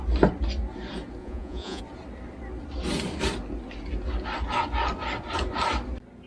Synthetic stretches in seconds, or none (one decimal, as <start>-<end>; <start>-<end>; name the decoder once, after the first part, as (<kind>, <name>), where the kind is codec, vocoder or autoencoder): 1.2-1.8 (vocoder, Vocos)